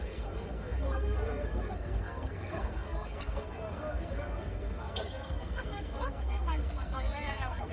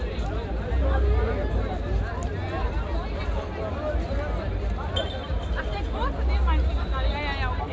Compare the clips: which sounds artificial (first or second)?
first